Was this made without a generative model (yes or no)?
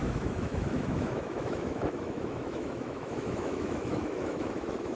no